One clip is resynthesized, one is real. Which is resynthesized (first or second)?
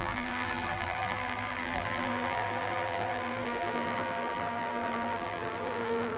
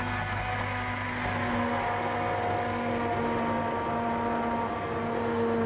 first